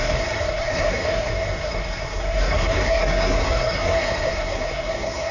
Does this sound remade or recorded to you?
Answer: remade